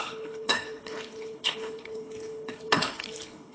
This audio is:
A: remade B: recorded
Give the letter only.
A